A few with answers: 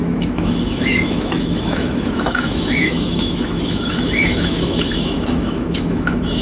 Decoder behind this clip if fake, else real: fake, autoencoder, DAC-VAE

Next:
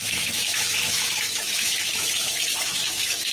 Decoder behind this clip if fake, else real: fake, autoencoder, DAC-VAE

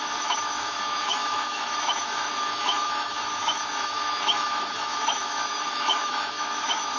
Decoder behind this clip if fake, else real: fake, autoencoder, DAC-VAE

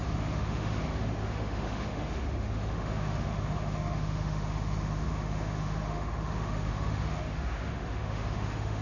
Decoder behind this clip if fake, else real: fake, autoencoder, DAC-VAE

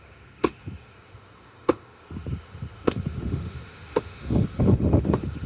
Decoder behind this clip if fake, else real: fake, autoencoder, DAC-VAE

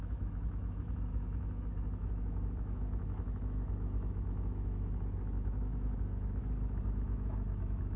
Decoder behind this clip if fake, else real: fake, autoencoder, DAC-VAE